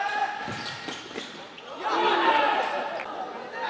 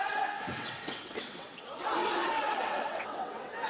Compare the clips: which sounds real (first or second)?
first